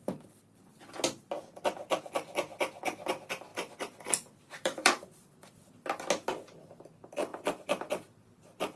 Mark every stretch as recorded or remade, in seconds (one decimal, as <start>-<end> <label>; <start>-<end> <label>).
0.0-3.5 recorded; 3.5-5.5 remade; 5.5-7.3 recorded; 7.3-7.9 remade; 7.9-8.8 recorded